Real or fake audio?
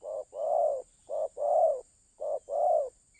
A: real